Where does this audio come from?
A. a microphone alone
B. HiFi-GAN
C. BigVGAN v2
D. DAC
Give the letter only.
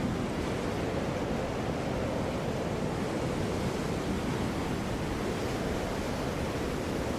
A